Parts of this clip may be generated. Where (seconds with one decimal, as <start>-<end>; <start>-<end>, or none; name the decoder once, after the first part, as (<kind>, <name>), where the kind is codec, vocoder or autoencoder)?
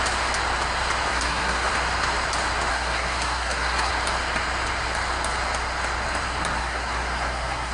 1.1-1.7 (codec, SNAC); 2.7-3.9; 6.6-7.7